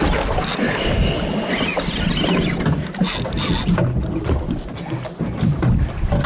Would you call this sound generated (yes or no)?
no